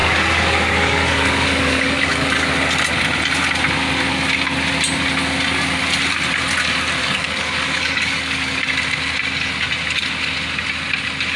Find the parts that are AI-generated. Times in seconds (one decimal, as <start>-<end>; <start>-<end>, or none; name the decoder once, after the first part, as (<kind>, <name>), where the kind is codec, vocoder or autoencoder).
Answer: 0.0-2.5 (codec, DAC); 7.0-8.6